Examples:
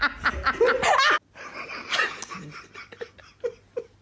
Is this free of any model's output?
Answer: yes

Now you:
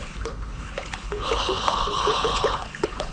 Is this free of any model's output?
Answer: no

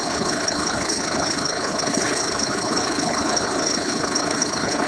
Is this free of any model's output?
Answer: no